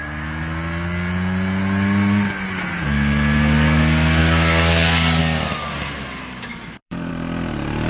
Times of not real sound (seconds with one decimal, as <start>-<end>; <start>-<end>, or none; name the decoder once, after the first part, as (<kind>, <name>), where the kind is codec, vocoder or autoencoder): 4.2-5.2 (codec, DAC); 6.5-7.1